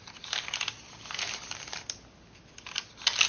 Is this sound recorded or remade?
recorded